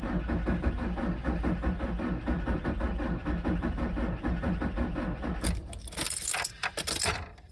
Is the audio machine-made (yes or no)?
no